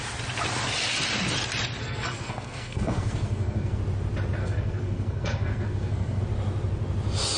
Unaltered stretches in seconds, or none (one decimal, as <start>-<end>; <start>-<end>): 0.0-1.8; 3.8-4.4; 6.2-7.4

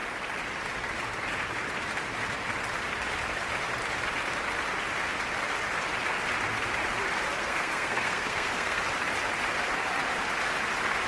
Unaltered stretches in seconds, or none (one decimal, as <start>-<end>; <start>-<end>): 0.0-7.4; 8.8-11.1

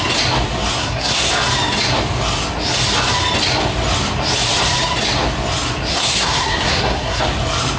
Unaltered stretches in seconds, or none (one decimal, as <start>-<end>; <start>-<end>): 0.0-0.8; 1.3-5.9; 7.2-7.8

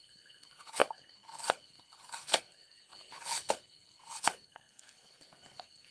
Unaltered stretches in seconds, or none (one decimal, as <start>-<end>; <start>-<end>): none

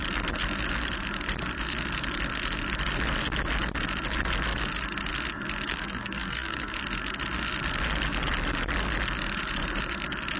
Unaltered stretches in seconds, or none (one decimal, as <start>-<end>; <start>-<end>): 0.0-5.7; 6.7-10.4

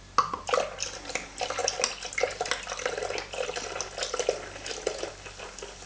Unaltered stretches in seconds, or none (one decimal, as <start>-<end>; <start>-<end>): 0.0-5.9